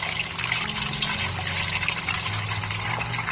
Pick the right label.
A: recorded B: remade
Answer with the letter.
A